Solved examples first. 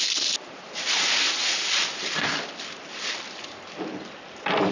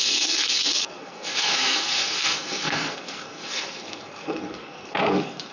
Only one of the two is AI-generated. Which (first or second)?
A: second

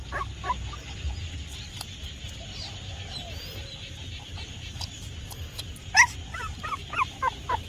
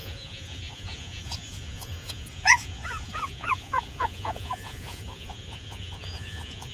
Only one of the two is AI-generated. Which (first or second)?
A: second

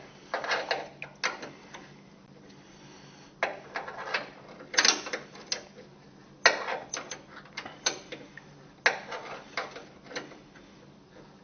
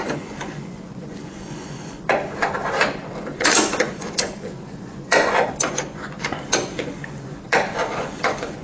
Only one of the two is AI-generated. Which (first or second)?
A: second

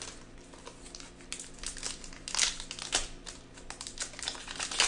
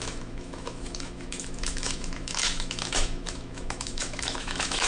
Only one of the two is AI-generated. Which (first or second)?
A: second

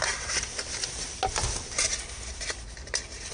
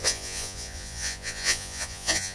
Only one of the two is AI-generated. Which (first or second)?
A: second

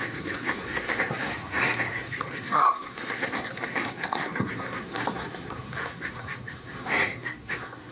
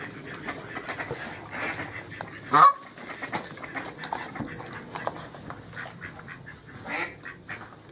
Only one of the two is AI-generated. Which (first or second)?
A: first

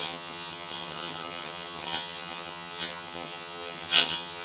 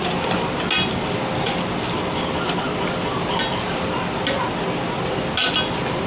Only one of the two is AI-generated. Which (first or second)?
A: first